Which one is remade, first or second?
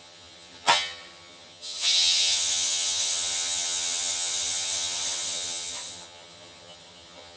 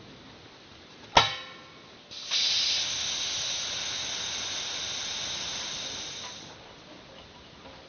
first